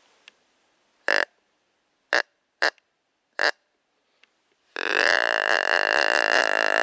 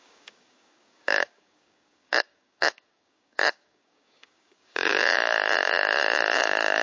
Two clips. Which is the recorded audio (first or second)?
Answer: first